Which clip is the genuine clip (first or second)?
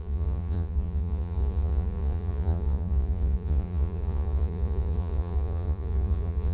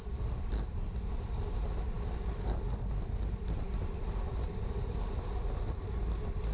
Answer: second